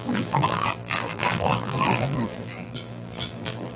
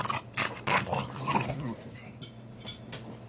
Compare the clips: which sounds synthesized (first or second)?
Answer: first